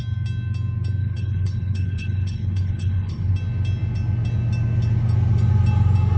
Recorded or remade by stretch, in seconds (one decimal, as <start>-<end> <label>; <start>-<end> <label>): 0.0-1.0 recorded; 1.0-3.3 remade; 3.3-6.2 recorded